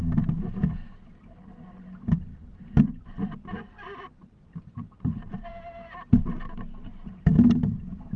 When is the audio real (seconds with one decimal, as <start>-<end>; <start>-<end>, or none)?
0.0-2.3; 6.2-8.2